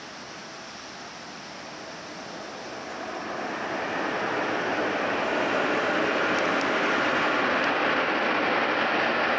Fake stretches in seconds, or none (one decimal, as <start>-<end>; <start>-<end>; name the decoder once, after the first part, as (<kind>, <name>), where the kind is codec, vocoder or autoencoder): none